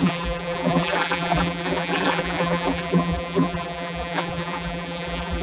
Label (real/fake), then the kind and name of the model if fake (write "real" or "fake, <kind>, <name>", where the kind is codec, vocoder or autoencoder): fake, vocoder, BigVGAN v2